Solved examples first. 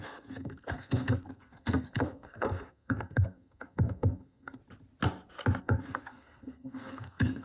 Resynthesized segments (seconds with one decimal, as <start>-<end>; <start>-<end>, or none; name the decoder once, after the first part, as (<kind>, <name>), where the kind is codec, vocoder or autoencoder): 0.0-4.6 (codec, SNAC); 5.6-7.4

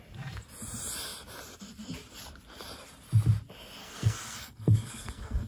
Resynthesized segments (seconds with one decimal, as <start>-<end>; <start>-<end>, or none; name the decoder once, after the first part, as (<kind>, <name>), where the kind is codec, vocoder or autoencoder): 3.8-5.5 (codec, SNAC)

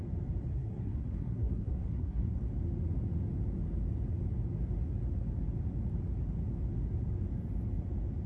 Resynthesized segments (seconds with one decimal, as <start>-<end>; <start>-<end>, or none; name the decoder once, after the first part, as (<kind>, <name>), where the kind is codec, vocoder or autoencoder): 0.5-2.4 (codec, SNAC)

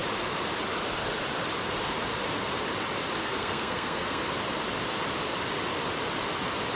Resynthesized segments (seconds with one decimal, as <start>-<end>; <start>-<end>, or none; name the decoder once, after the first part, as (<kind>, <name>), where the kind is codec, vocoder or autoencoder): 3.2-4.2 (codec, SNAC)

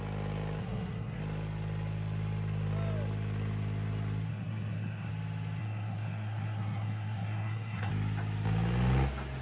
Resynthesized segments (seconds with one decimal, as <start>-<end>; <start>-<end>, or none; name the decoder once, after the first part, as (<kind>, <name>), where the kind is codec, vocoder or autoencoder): 0.6-1.2 (codec, SNAC); 4.3-5.1; 5.6-7.9

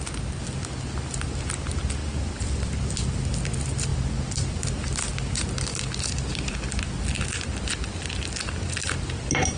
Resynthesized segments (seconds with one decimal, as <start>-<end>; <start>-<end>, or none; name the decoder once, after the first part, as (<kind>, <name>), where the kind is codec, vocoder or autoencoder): none